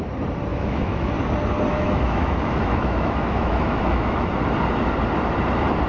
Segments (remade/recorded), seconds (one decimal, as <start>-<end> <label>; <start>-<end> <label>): 0.0-0.5 recorded; 0.5-1.1 remade; 1.1-1.7 recorded; 1.7-4.3 remade; 4.3-5.9 recorded